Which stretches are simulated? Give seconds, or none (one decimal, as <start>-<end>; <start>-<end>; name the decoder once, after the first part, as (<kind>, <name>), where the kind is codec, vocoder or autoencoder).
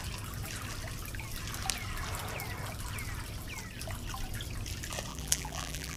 5.1-6.0 (vocoder, BigVGAN v2)